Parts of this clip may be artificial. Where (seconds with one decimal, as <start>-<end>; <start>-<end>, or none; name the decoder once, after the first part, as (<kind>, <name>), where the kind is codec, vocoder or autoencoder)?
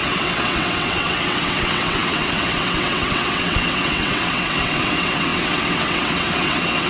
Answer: 0.0-6.9 (vocoder, WaveNeXt)